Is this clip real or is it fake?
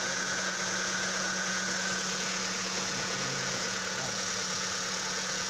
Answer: fake